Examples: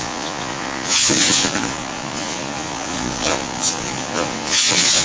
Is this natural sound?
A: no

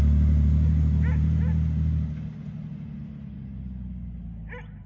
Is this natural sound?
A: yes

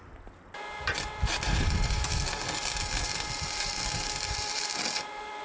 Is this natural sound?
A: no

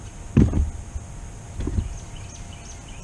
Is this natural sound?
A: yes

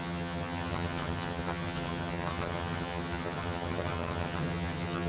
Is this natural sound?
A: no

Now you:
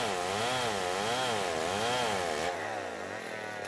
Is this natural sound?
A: yes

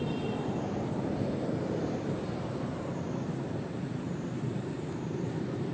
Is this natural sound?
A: no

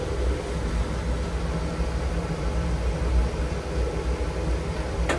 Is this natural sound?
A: yes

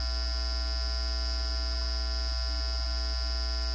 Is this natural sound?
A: yes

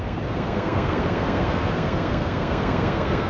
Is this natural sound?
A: no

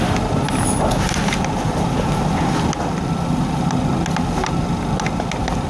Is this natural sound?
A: yes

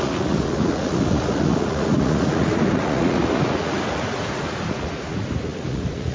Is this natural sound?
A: no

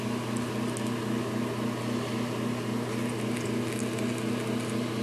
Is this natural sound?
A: yes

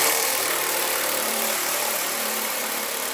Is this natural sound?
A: no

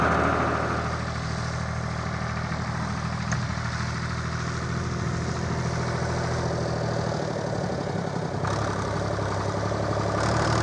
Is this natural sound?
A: yes